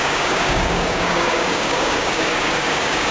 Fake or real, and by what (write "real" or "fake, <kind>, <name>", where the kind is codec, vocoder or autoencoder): fake, codec, DAC